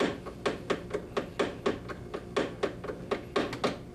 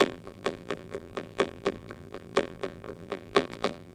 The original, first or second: first